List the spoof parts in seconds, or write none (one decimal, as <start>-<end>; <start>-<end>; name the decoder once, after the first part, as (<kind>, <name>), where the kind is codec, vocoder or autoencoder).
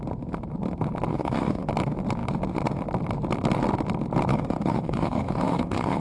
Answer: 1.1-1.7 (autoencoder, DAC-VAE); 4.3-6.0